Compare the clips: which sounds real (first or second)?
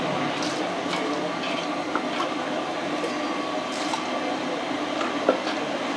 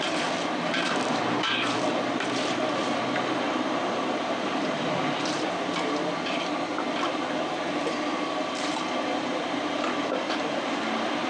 first